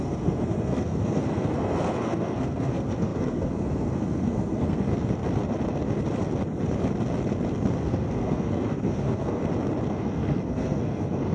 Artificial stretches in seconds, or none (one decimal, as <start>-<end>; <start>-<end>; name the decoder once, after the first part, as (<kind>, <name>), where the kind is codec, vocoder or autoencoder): 0.0-4.9 (codec, SNAC); 7.8-9.4; 9.9-11.3